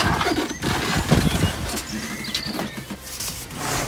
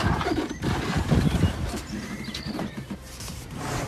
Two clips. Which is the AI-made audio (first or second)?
second